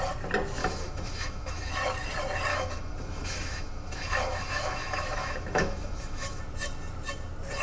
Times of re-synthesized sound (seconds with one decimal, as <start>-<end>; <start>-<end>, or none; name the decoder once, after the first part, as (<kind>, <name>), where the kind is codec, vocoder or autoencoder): 0.6-1.7 (autoencoder, DAC-VAE); 2.5-6.4